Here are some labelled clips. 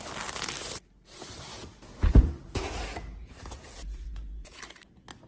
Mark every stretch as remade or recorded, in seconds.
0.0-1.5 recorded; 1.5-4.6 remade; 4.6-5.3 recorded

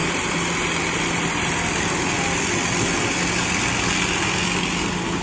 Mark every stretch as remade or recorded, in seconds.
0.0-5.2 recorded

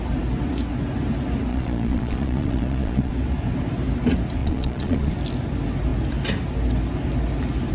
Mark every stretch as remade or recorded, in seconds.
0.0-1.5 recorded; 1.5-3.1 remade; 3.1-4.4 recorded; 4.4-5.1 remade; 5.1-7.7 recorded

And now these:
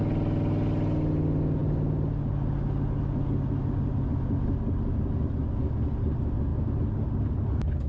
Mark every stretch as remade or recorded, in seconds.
0.0-7.9 recorded